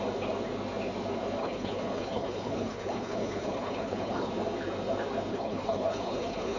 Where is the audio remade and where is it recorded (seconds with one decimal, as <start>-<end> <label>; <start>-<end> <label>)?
0.0-1.4 recorded; 1.4-4.3 remade; 4.3-5.3 recorded; 5.3-6.6 remade